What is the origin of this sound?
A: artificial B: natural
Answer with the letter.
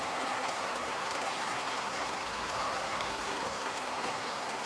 A